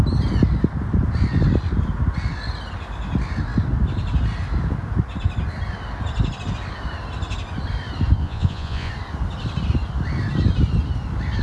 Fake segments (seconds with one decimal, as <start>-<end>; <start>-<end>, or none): 8.2-8.9